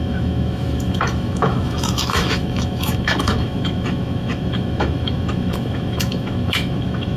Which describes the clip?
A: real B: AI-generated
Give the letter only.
B